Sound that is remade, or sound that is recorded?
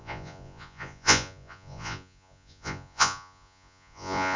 remade